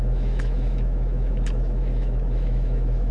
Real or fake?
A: fake